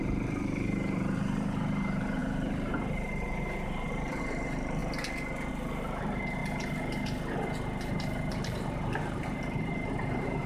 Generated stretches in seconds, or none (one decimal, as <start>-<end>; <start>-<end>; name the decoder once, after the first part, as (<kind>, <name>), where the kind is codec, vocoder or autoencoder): 0.0-4.8 (vocoder, BigVGAN v2); 5.5-6.4; 8.3-10.5